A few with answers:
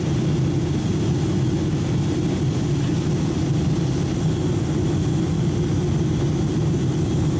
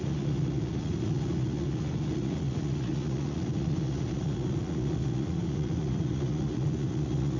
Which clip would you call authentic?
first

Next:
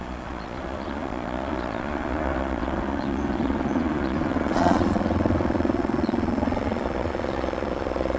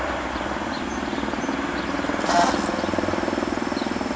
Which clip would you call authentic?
second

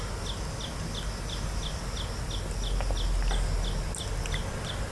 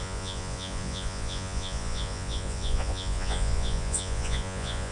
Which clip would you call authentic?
first